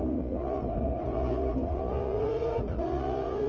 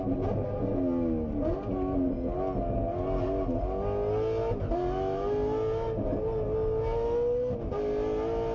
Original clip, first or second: second